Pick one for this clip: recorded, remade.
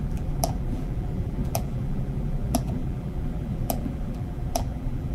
remade